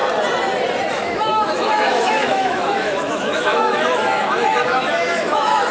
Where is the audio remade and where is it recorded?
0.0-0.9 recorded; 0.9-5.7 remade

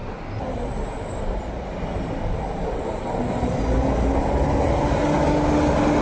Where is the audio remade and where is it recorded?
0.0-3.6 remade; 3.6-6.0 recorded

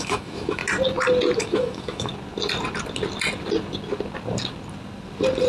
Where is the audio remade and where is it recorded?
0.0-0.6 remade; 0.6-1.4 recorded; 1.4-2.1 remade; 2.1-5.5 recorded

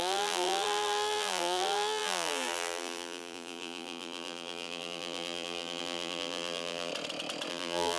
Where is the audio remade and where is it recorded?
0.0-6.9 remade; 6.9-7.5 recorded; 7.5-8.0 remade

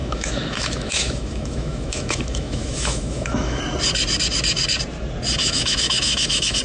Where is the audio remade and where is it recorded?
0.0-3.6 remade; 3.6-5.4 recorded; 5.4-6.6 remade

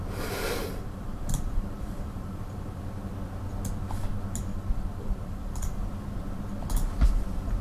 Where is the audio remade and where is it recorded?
0.0-0.6 recorded; 0.6-2.8 remade; 2.8-4.5 recorded; 4.5-5.8 remade; 5.8-7.6 recorded